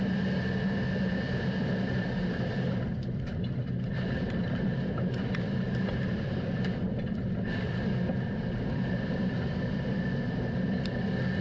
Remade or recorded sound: remade